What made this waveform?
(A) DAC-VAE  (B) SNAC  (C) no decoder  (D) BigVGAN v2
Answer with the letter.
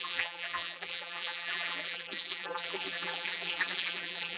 D